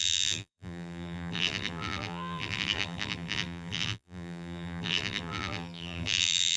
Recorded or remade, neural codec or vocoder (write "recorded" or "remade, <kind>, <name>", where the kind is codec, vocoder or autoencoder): remade, vocoder, BigVGAN v2